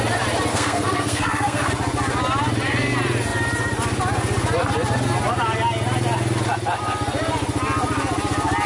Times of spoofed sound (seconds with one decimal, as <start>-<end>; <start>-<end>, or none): 0.5-1.7